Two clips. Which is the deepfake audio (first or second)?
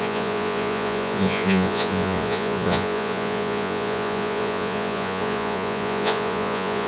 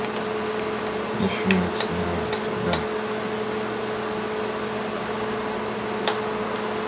first